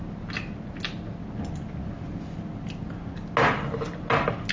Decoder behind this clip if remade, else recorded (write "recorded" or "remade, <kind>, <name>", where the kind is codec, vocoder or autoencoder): recorded